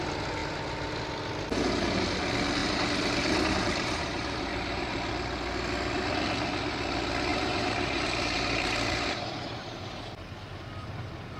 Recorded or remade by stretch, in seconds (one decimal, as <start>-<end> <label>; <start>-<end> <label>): 0.0-2.6 recorded; 2.6-5.1 remade; 5.1-7.3 recorded; 7.3-10.5 remade; 10.5-11.4 recorded